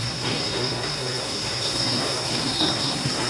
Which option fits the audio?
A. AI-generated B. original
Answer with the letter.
A